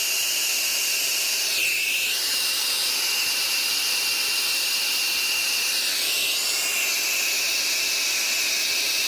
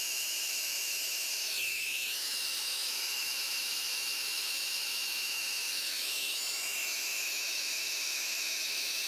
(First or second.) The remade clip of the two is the second